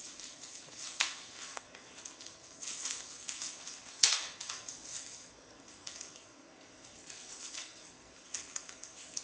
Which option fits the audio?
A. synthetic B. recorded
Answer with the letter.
A